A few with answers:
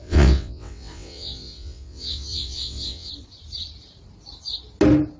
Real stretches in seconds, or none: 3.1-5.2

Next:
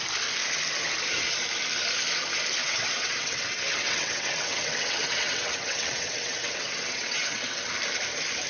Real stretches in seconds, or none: 0.0-2.6; 7.7-8.5

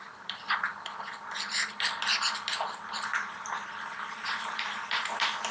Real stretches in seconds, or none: 0.0-5.5